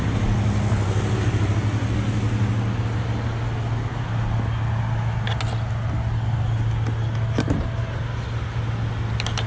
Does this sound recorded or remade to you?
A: recorded